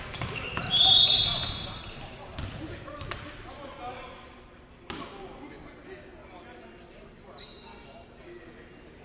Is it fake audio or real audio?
real